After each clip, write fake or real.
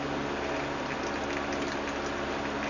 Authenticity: real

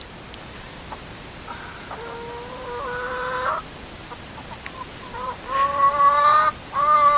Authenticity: real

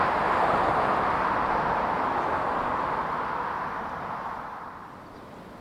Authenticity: real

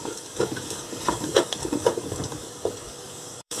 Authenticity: fake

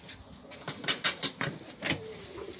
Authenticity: real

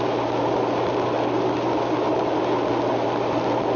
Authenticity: real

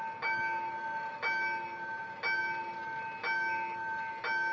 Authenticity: real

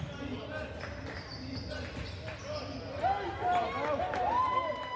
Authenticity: real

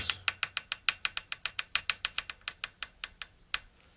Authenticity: real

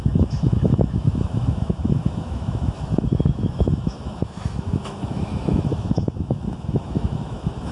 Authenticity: fake